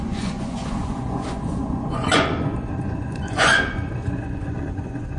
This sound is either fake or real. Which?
fake